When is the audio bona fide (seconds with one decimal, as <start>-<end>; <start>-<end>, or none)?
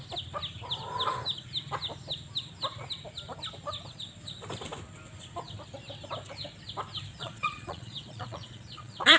0.0-7.1